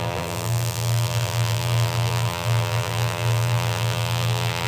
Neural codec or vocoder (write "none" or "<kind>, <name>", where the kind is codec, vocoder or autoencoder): vocoder, BigVGAN v2